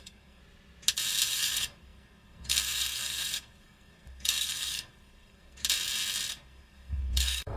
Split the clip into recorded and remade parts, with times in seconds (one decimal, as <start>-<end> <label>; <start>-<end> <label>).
0.0-0.4 remade; 0.4-1.3 recorded; 1.3-5.6 remade; 5.6-6.3 recorded; 6.3-7.6 remade